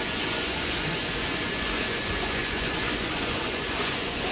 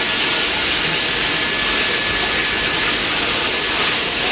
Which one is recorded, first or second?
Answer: second